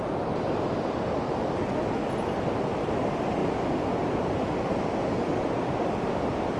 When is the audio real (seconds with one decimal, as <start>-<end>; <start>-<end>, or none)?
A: 0.0-6.6

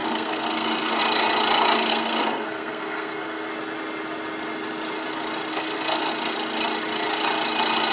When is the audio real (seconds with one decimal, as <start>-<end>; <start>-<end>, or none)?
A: 1.0-1.9; 3.5-5.5; 6.1-7.9

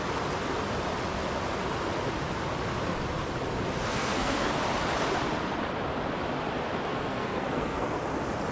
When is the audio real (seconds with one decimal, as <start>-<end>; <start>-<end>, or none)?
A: 0.0-3.9; 4.5-6.9; 8.0-8.5

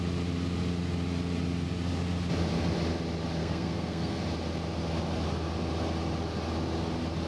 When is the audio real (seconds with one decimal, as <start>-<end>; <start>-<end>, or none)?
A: 0.0-3.4; 4.2-7.3

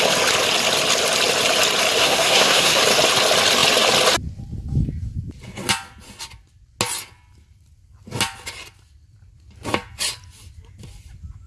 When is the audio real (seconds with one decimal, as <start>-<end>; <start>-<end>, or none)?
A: 0.0-2.0; 2.8-11.5

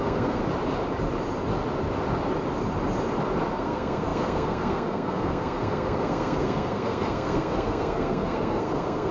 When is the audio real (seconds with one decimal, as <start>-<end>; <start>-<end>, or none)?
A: 0.4-3.5